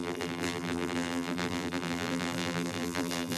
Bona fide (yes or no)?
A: no